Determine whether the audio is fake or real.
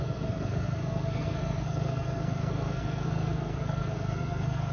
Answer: fake